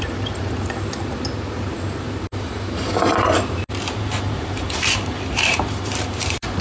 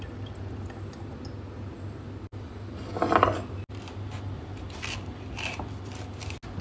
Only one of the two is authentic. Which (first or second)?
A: second